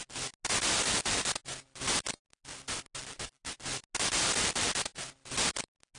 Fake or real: real